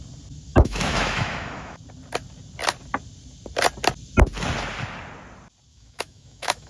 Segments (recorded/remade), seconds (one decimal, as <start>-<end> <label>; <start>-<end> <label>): 0.0-0.5 recorded; 0.5-1.8 remade; 1.8-5.7 recorded; 5.7-6.7 remade